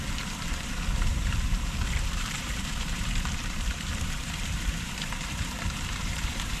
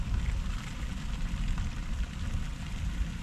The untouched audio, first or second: second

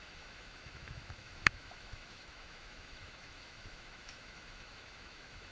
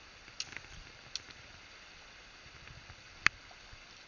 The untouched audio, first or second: second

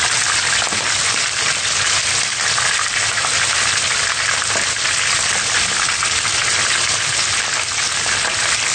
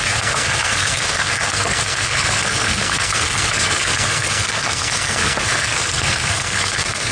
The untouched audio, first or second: first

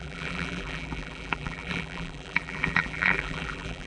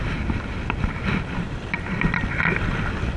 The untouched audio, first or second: second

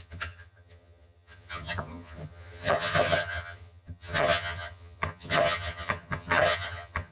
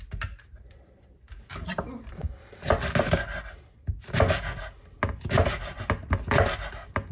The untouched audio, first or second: second